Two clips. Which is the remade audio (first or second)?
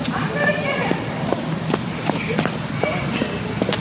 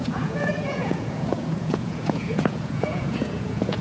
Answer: second